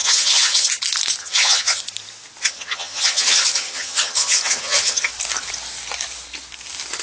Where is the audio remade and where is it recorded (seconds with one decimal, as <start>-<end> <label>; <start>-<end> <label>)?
0.0-0.7 remade; 0.7-1.2 recorded; 1.2-1.8 remade; 1.8-2.4 recorded; 2.4-5.1 remade; 5.1-7.0 recorded